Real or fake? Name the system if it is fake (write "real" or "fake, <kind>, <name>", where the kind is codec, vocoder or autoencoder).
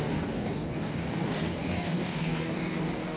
fake, codec, DAC